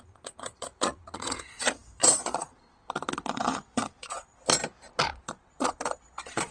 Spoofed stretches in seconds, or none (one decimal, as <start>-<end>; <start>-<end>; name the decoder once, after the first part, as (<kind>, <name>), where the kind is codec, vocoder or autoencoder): 0.0-4.4 (vocoder, Vocos); 5.0-6.5